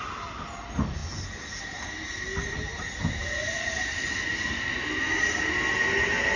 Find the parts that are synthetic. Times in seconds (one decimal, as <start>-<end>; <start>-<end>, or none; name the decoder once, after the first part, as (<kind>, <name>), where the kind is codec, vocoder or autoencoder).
none